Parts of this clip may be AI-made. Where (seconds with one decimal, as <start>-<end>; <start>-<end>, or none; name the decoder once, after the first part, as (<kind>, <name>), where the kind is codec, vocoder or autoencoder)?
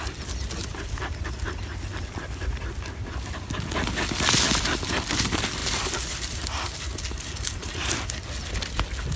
none